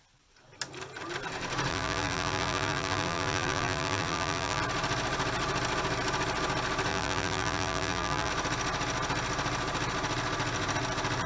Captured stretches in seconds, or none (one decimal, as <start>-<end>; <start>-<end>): 0.0-1.7; 4.6-6.9; 8.3-11.3

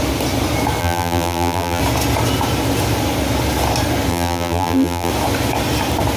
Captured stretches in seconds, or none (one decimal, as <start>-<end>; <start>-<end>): 0.0-0.8; 1.8-4.1; 5.1-6.2

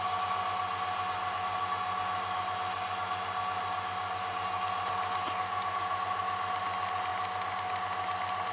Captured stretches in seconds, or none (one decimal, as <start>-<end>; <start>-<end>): 0.0-8.5